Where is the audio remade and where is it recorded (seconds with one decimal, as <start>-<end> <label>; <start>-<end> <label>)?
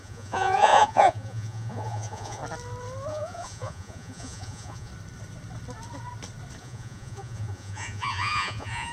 0.0-2.4 remade; 2.4-3.1 recorded; 3.1-4.9 remade; 4.9-6.6 recorded; 6.6-8.9 remade